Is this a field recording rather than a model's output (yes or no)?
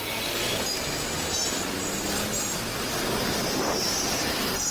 yes